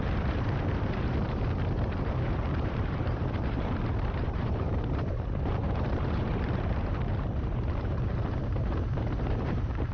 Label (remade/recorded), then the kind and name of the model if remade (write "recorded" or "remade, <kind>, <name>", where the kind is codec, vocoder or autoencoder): remade, vocoder, BigVGAN v2